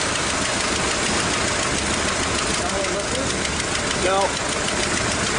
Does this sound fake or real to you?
real